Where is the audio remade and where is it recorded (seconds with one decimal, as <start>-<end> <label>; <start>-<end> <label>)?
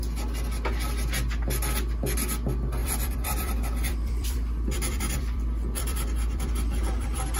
0.0-2.8 recorded; 2.8-7.4 remade